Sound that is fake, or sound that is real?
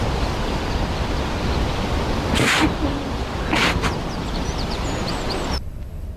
real